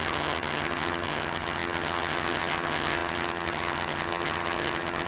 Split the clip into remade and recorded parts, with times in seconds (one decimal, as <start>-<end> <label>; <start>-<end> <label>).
0.0-5.1 remade